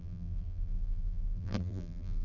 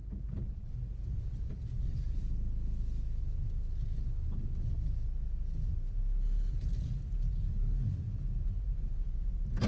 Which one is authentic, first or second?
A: second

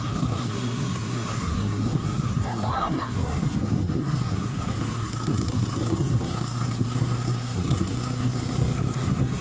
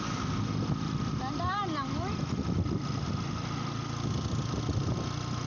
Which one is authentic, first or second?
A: second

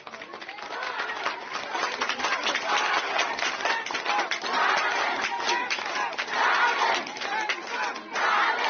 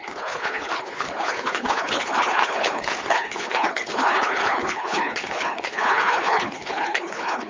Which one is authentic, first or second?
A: first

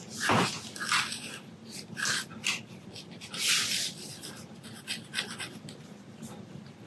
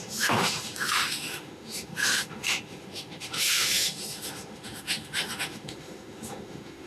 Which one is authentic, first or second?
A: first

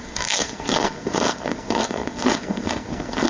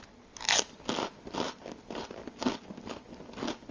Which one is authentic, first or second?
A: second